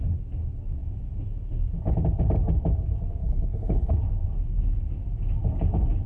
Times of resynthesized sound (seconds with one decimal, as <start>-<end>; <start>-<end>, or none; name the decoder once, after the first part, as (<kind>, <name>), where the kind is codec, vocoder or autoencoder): 3.2-3.9 (codec, HILCodec)